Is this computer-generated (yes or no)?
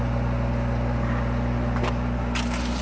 no